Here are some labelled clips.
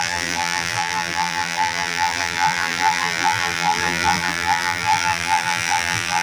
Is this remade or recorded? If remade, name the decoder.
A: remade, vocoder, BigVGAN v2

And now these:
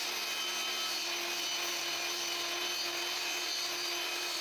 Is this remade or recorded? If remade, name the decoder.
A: recorded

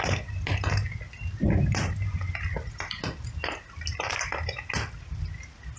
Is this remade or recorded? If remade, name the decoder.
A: recorded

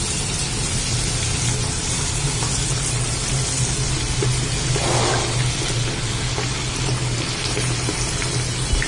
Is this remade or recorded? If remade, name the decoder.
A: recorded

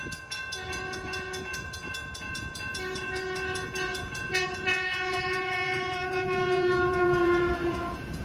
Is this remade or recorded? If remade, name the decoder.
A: remade, vocoder, Vocos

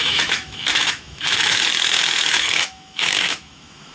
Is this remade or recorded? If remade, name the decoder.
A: remade, autoencoder, DAC-VAE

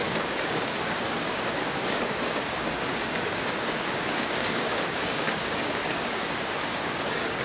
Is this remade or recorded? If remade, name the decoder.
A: remade, codec, DAC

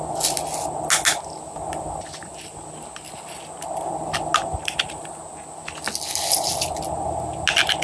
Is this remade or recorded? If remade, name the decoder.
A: recorded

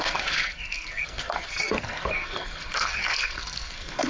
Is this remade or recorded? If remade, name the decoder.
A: remade, codec, SNAC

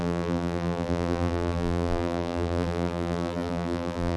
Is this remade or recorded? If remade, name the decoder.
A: remade, vocoder, BigVGAN v2